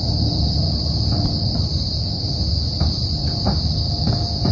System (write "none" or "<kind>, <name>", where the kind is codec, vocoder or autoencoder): none